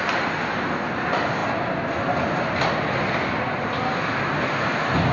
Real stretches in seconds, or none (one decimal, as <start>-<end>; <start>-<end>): 0.0-5.1